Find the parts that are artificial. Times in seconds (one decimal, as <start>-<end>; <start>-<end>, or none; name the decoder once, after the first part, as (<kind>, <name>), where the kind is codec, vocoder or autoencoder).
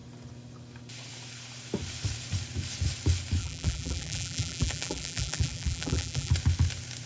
3.4-6.3 (vocoder, BigVGAN v2)